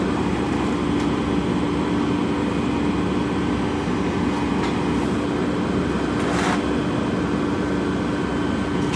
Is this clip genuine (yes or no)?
yes